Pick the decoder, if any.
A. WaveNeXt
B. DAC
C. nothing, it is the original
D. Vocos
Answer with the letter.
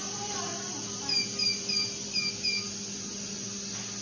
C